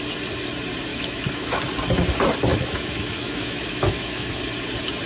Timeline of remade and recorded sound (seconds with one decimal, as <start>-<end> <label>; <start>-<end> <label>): 0.0-0.9 recorded; 0.9-1.6 remade; 1.6-2.5 recorded; 2.5-4.4 remade; 4.4-5.1 recorded